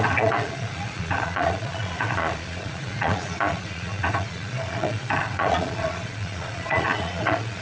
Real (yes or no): no